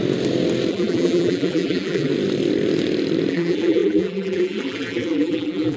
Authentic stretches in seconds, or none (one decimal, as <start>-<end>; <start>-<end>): 0.0-0.7; 2.1-3.3